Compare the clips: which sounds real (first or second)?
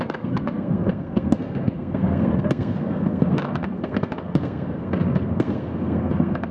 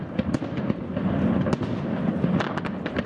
second